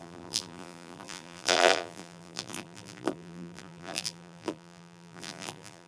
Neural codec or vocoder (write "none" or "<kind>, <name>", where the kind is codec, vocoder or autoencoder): vocoder, BigVGAN v2